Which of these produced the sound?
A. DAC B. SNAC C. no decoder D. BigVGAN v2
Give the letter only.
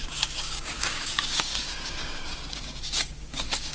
A